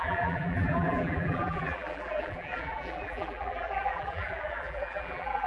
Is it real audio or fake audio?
fake